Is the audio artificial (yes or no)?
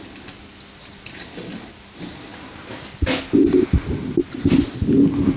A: no